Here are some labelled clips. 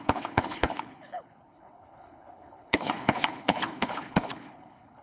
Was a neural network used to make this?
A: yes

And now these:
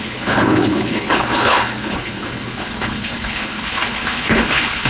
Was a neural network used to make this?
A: yes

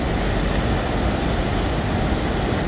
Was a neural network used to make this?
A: no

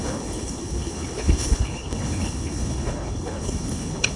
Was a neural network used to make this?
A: yes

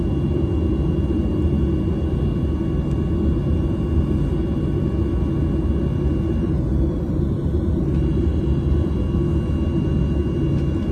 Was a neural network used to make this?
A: no